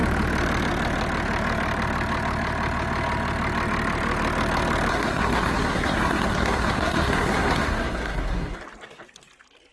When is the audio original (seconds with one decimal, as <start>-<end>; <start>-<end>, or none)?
0.0-4.9; 8.6-9.7